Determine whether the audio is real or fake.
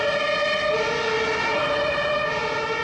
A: real